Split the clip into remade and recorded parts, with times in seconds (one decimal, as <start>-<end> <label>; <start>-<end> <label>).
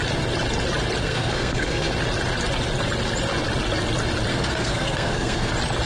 0.0-1.0 recorded; 1.0-1.9 remade; 1.9-4.3 recorded; 4.3-5.5 remade; 5.5-5.9 recorded